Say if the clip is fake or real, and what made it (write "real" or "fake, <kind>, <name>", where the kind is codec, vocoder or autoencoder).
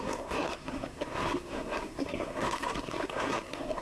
fake, codec, SNAC